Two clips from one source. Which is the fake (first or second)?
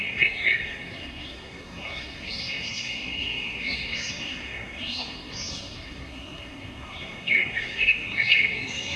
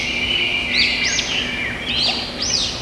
first